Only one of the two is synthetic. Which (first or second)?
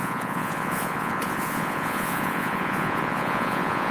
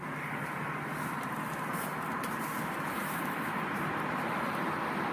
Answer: first